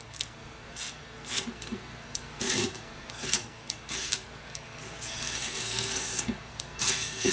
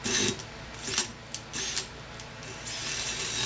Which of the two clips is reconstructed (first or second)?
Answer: first